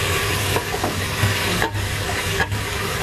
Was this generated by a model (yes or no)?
yes